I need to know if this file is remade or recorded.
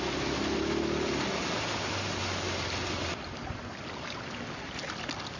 recorded